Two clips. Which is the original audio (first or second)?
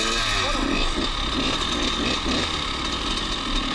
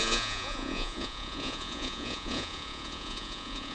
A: first